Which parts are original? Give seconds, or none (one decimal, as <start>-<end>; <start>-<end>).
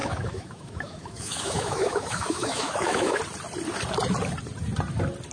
3.2-5.3